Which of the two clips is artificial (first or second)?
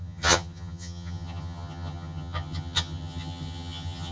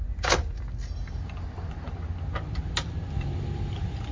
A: first